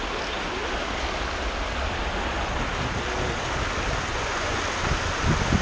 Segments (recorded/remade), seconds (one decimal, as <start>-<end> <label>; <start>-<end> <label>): 0.0-4.1 recorded; 4.1-4.6 remade; 4.6-5.6 recorded